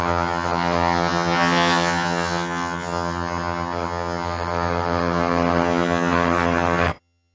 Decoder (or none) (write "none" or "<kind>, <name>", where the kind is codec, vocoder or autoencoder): vocoder, HiFi-GAN